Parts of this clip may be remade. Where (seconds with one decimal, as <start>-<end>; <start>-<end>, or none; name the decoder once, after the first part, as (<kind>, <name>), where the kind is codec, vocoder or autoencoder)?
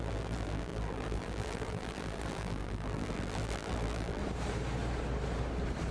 0.0-4.2 (vocoder, BigVGAN v2)